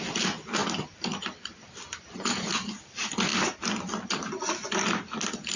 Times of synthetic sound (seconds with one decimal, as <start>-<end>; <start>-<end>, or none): none